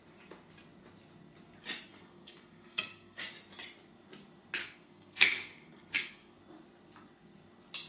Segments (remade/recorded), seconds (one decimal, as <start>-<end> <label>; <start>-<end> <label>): 0.0-1.9 recorded; 1.9-3.2 remade; 3.2-4.6 recorded; 4.6-6.4 remade; 6.4-7.9 recorded